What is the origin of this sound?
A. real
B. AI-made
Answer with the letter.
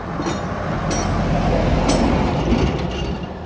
A